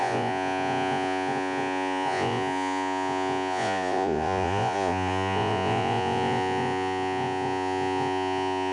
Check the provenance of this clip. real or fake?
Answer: fake